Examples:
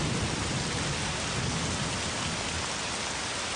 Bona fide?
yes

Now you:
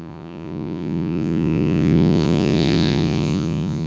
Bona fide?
no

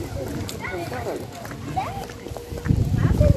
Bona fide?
yes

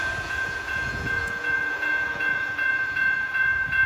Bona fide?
no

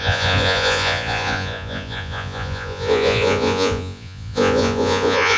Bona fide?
no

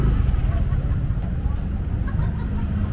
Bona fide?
yes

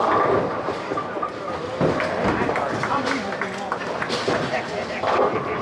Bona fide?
yes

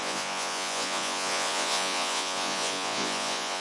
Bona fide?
no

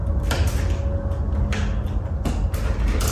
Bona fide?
yes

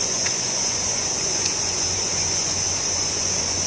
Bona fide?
no